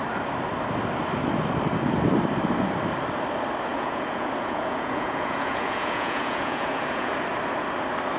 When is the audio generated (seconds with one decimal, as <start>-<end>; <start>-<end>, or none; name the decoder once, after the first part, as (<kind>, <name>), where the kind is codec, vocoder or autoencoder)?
3.7-7.1 (vocoder, Vocos)